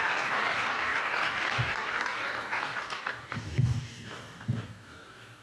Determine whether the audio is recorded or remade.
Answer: remade